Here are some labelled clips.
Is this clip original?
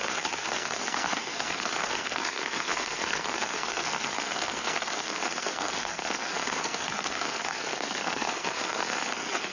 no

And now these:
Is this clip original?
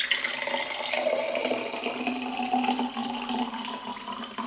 yes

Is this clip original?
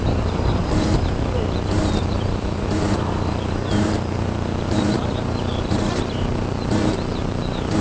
no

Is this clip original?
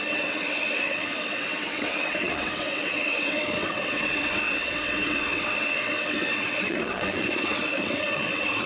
no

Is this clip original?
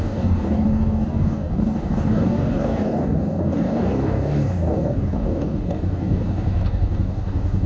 no